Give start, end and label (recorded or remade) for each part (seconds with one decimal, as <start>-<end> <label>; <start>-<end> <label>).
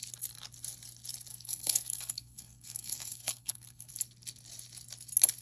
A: 0.0-1.3 recorded; 1.3-3.9 remade; 3.9-5.4 recorded